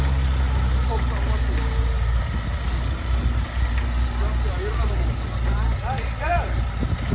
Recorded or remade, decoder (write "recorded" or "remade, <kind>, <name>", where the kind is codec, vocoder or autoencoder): recorded